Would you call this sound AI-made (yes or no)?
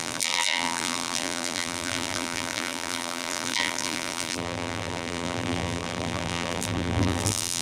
yes